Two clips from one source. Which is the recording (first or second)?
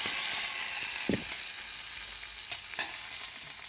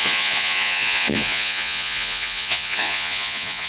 first